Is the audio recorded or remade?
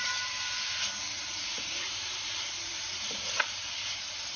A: remade